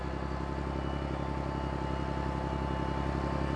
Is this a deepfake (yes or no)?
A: no